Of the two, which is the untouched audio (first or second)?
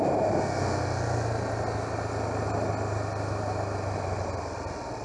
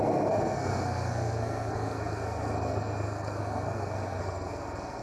first